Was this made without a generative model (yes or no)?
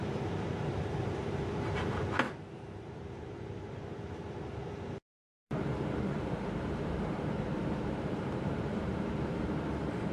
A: no